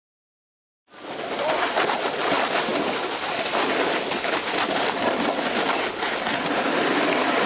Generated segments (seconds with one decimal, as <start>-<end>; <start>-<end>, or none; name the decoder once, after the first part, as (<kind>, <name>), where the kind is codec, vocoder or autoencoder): none